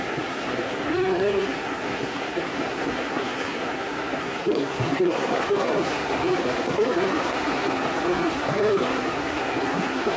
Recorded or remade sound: remade